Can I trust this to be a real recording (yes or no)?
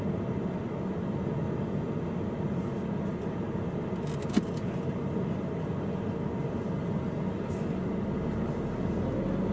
yes